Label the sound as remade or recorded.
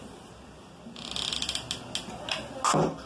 recorded